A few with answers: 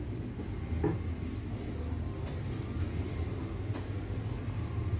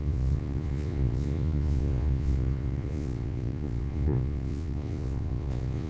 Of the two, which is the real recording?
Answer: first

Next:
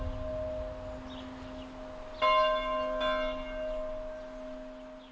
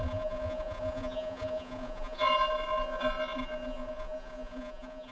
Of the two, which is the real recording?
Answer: first